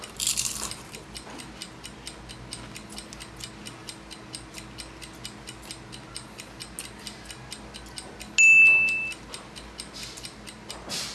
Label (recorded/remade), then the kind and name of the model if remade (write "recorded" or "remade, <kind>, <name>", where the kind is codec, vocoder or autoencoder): recorded